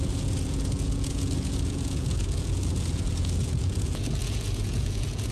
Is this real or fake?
fake